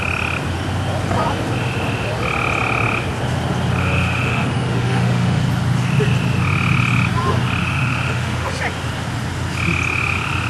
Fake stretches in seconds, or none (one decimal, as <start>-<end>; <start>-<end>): 3.8-5.4; 7.6-8.5